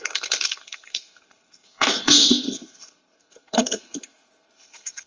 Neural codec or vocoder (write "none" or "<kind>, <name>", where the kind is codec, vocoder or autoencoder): codec, SNAC